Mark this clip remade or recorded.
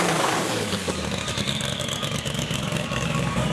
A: remade